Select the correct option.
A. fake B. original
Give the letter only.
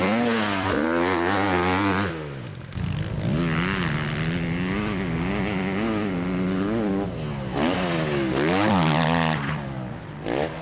B